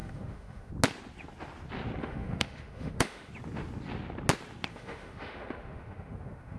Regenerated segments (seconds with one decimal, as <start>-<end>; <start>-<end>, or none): 0.0-0.7; 2.0-3.3; 4.7-6.6

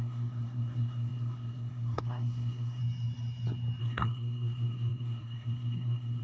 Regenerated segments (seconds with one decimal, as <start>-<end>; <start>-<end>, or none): 0.0-2.8; 3.8-6.2

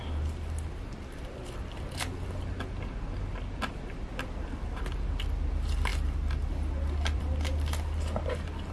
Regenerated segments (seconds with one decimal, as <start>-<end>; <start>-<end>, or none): 0.0-8.7

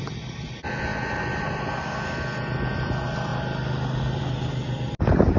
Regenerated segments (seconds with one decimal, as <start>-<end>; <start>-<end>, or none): none